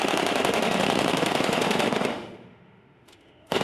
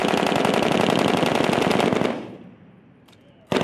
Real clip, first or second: second